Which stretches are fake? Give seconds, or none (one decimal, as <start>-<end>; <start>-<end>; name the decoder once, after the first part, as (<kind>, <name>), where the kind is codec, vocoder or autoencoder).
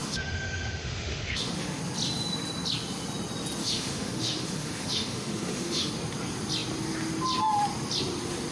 0.0-1.8 (autoencoder, DAC-VAE); 3.6-5.9